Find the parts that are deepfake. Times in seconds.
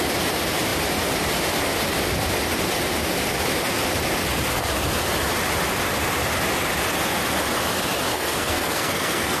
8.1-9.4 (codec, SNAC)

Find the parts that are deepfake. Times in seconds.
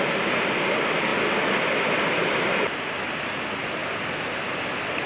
none